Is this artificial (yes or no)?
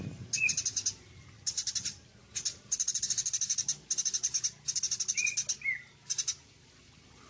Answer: no